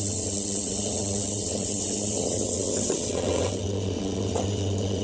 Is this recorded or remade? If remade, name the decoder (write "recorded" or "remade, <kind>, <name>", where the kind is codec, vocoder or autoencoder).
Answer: remade, vocoder, WaveNeXt